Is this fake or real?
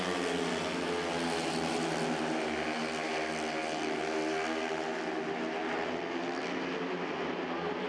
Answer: real